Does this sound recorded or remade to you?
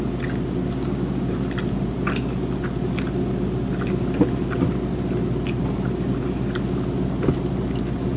recorded